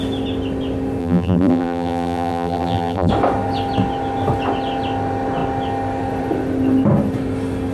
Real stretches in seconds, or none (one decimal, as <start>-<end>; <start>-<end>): 0.0-1.0; 3.1-7.7